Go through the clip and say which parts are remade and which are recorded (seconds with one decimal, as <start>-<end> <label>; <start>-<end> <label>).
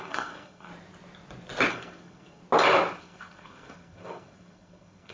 0.0-0.7 remade; 0.7-1.7 recorded; 1.7-2.4 remade; 2.4-3.0 recorded; 3.0-5.1 remade